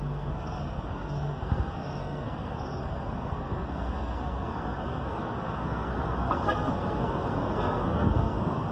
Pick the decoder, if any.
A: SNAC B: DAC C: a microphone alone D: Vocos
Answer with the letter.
A